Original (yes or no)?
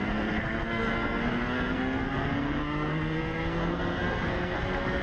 no